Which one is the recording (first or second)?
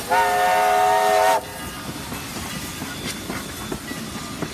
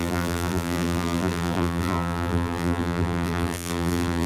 first